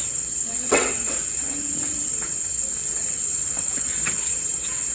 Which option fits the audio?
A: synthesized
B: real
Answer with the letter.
A